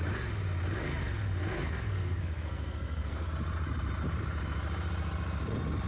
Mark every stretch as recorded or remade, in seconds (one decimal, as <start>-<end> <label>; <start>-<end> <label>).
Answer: 0.0-1.0 recorded; 1.0-3.3 remade; 3.3-5.9 recorded